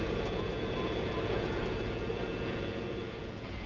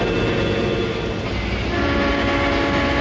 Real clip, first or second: second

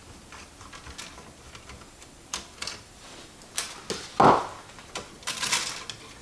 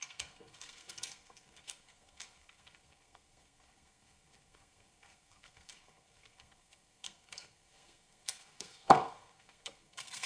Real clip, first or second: first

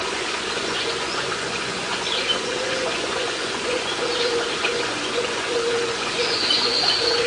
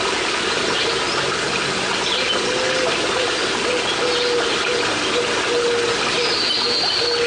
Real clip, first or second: second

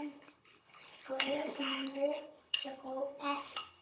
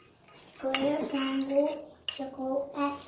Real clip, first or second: second